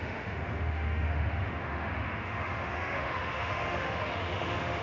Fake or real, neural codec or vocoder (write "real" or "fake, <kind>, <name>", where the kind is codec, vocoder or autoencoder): fake, autoencoder, DAC-VAE